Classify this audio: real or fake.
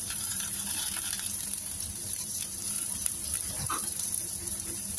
fake